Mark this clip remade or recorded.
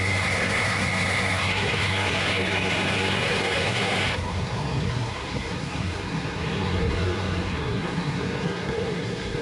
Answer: remade